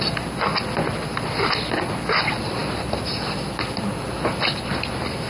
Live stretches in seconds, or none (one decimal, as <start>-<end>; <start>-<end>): 0.0-5.3